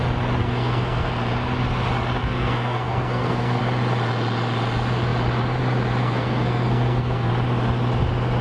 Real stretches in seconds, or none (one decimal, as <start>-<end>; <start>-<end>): 0.0-0.4; 1.1-2.2; 3.6-6.0; 7.3-8.4